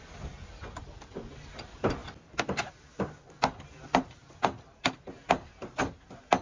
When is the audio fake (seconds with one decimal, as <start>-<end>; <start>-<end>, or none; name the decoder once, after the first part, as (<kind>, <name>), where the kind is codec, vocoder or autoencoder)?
none